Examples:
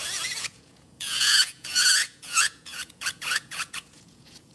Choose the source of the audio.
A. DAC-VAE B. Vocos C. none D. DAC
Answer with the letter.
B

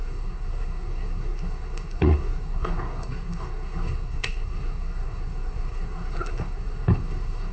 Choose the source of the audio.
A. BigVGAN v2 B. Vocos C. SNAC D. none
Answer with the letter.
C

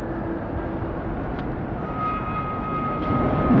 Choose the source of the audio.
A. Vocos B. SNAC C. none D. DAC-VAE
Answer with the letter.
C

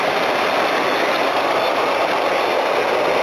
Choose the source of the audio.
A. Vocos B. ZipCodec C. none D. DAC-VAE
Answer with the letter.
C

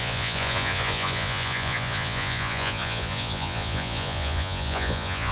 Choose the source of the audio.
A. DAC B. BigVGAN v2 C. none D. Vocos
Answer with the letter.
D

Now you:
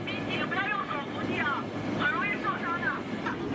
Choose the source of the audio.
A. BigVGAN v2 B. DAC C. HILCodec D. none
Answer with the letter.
A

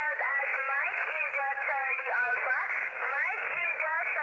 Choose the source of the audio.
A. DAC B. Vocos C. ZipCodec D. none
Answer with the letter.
A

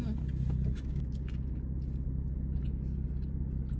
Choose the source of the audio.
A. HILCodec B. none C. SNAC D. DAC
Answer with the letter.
B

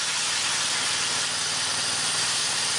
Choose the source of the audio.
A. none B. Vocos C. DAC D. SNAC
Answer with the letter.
A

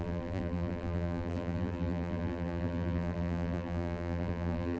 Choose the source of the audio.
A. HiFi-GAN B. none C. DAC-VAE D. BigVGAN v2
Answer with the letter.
D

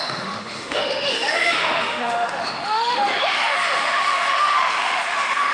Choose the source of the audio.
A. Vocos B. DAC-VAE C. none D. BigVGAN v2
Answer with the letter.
B